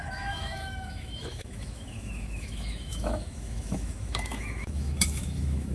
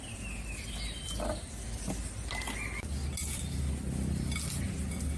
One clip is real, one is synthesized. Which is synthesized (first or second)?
first